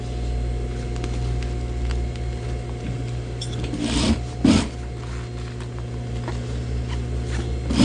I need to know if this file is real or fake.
real